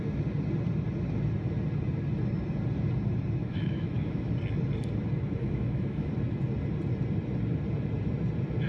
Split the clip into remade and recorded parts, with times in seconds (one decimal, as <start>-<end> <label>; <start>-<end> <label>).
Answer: 0.0-3.4 recorded; 3.4-4.3 remade; 4.3-5.4 recorded; 5.4-6.1 remade; 6.1-8.7 recorded